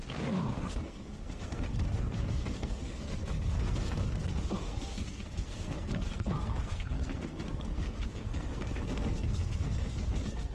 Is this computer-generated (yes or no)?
yes